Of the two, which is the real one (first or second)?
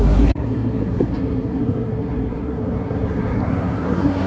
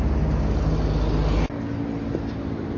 second